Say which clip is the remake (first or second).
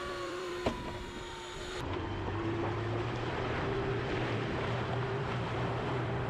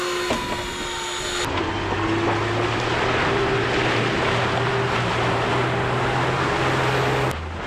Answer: first